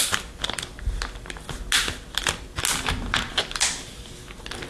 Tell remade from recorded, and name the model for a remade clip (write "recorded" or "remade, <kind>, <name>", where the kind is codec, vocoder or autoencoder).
recorded